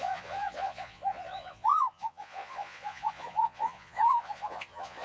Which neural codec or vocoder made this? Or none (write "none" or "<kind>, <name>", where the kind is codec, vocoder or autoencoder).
vocoder, Vocos